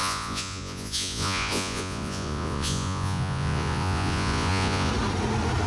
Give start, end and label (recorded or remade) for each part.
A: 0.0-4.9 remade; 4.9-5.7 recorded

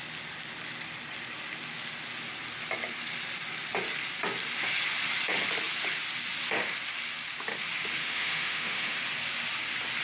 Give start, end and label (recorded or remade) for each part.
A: 0.0-8.0 recorded; 8.0-9.0 remade; 9.0-10.0 recorded

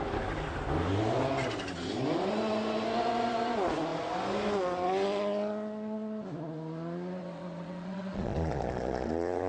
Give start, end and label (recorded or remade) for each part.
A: 0.0-7.2 recorded; 7.2-9.5 remade

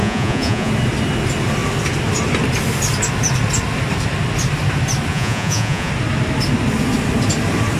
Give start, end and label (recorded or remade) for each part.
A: 0.0-0.7 remade; 0.7-5.1 recorded; 5.1-5.9 remade; 5.9-7.8 recorded